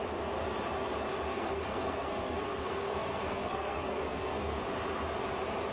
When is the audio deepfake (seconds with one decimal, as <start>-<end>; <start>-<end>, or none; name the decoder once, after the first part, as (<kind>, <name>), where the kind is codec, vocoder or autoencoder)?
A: 1.3-4.7 (codec, SNAC)

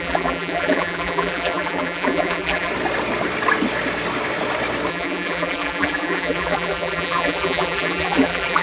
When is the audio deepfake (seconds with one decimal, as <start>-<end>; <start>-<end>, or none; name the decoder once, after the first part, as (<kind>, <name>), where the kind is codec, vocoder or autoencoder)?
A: 0.0-2.7 (vocoder, BigVGAN v2); 4.9-8.6

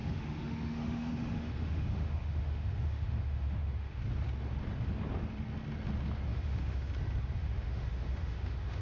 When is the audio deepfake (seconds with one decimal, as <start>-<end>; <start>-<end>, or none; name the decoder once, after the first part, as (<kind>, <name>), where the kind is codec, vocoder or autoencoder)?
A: 0.0-4.0 (autoencoder, DAC-VAE); 6.3-6.9; 7.4-8.8

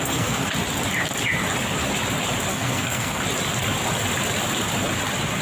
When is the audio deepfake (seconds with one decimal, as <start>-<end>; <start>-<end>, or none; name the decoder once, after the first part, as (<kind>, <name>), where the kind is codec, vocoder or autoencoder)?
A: 0.0-0.5 (codec, SNAC); 2.5-3.2

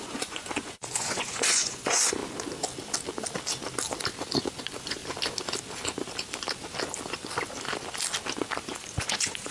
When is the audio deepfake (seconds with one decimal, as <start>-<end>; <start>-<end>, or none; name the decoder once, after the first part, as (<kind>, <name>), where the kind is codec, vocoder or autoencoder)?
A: 0.0-2.2 (vocoder, Vocos); 4.6-5.0; 8.3-9.5

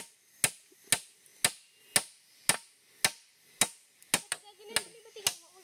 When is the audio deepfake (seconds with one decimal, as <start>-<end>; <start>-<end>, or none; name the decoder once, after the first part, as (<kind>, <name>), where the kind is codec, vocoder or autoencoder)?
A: none

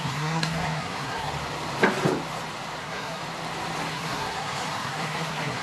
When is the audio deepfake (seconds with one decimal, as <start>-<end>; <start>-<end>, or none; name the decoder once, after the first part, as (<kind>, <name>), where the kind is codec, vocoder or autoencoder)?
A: 0.0-1.3 (codec, SNAC); 2.8-3.2; 3.9-5.6